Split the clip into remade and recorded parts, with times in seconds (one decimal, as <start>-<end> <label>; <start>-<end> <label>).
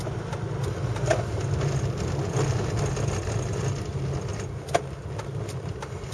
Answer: 0.0-6.1 recorded